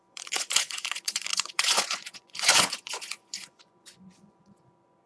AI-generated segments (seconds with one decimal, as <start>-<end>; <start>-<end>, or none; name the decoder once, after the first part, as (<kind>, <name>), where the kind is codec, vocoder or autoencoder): 0.0-5.1 (vocoder, Vocos)